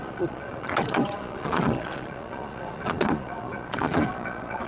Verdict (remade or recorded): remade